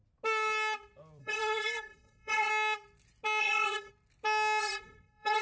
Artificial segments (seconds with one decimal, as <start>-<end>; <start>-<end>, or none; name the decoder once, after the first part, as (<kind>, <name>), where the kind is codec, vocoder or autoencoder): 1.2-2.5 (codec, SNAC); 3.4-3.9; 4.6-5.4